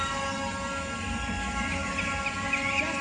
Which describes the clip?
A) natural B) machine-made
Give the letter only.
A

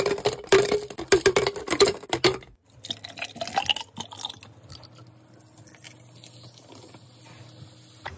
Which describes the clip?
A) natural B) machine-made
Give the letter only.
A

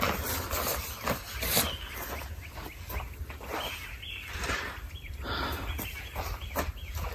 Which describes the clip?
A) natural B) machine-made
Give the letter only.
A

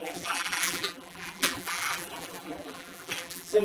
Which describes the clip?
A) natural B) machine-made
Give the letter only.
B